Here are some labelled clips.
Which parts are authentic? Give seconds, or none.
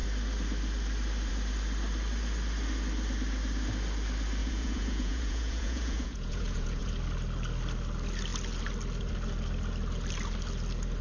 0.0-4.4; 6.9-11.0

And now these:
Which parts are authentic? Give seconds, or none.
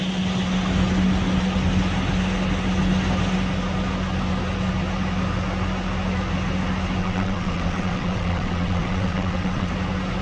0.0-7.0; 9.7-10.2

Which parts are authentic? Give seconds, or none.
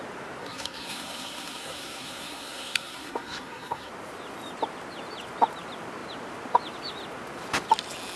0.0-0.4; 3.9-8.2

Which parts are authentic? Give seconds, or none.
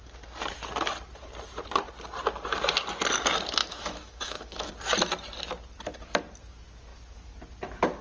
0.0-3.6; 4.7-8.0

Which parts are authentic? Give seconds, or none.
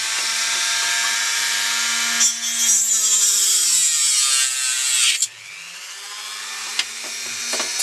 0.0-7.8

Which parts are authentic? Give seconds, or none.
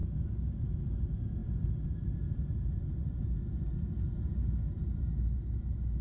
0.0-6.0